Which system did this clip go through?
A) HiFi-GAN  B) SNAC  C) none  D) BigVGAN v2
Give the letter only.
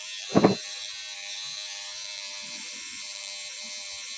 C